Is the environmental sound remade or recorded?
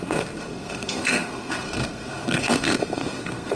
remade